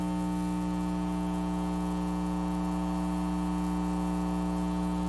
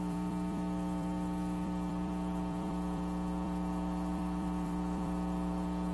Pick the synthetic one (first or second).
second